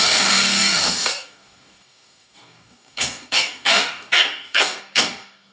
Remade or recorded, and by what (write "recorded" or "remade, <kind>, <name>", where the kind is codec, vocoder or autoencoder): remade, codec, DAC